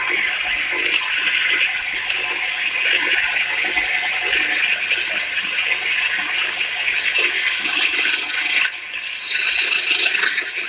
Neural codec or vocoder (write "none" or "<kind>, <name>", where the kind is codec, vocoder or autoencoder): none